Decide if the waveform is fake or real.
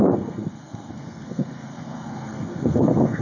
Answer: fake